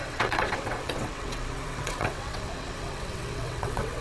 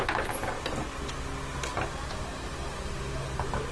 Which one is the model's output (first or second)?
first